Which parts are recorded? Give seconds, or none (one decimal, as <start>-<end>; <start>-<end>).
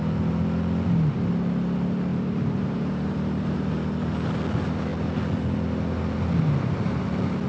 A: 0.0-2.1; 3.7-7.5